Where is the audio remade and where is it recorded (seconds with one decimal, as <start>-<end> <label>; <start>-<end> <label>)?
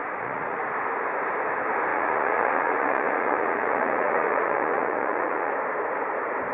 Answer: 0.0-0.6 remade; 0.6-1.9 recorded; 1.9-5.5 remade; 5.5-6.5 recorded